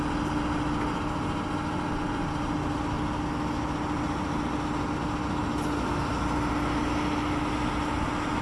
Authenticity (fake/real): real